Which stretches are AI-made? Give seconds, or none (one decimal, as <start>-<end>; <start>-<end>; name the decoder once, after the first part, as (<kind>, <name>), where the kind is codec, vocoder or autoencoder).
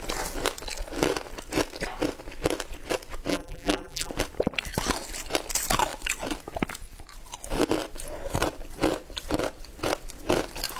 3.3-4.1 (vocoder, BigVGAN v2)